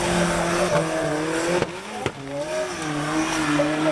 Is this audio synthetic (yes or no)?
no